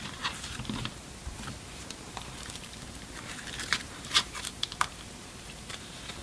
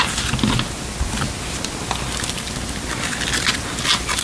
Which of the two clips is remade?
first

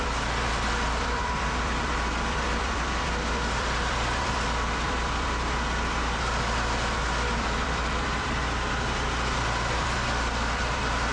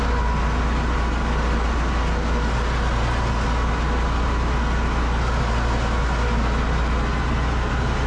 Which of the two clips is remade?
first